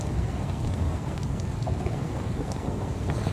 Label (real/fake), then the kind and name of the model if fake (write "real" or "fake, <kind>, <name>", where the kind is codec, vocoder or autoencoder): fake, codec, SNAC